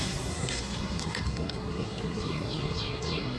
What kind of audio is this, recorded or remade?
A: remade